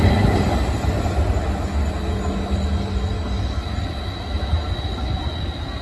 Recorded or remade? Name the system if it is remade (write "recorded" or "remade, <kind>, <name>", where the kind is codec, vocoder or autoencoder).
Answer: recorded